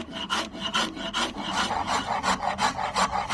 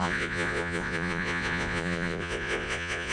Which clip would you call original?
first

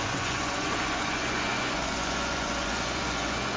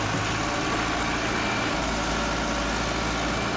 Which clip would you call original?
second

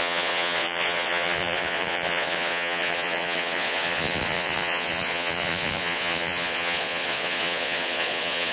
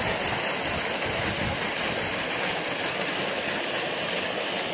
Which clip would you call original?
second